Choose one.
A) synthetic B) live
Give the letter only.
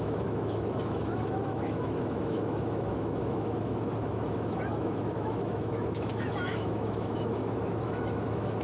A